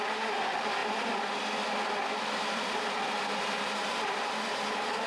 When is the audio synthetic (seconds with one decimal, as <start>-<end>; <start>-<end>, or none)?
0.0-5.1